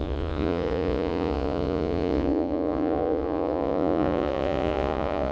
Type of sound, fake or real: fake